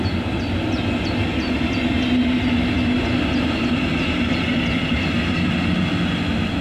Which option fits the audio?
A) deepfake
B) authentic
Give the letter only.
B